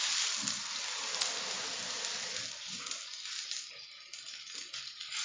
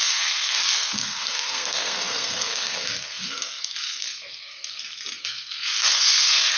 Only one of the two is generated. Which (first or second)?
second